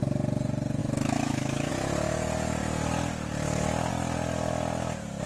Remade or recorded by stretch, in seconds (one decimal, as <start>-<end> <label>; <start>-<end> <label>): 0.0-0.8 recorded; 0.8-1.7 remade; 1.7-5.3 recorded